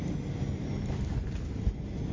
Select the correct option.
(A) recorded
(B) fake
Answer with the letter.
A